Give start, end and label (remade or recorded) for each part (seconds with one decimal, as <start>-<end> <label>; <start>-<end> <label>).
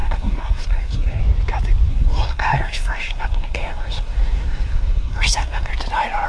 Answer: 0.0-1.2 remade; 1.2-1.9 recorded; 1.9-5.7 remade; 5.7-6.3 recorded